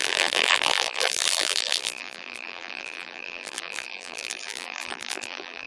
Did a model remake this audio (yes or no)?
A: yes